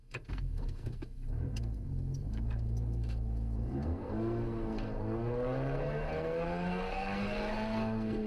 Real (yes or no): no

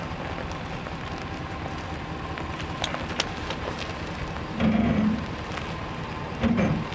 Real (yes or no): yes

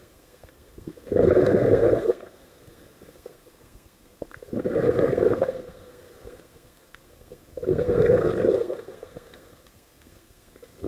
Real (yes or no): no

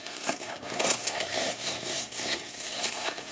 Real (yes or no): no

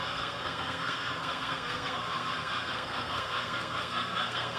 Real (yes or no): no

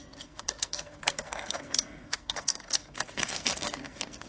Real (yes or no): no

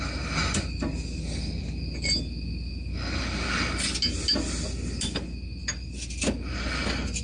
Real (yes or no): yes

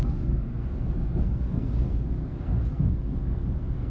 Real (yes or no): no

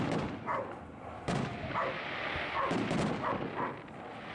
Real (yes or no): yes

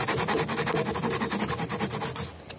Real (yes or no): yes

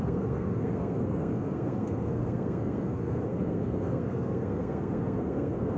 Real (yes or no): no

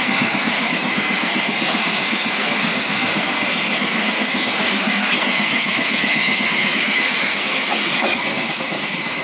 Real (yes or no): no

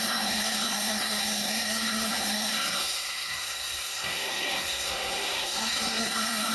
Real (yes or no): no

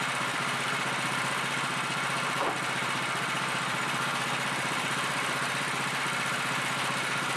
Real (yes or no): yes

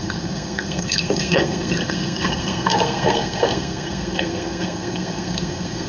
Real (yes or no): no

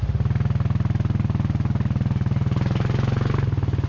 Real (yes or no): yes